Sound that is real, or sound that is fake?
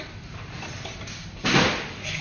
fake